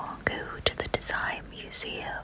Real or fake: real